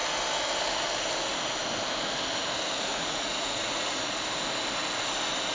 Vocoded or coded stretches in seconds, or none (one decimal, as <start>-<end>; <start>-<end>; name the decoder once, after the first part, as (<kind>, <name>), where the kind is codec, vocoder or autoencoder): 2.9-4.1 (vocoder, Vocos)